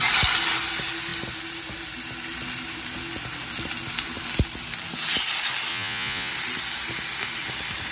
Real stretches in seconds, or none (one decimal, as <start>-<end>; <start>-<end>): 0.0-5.7; 6.3-7.9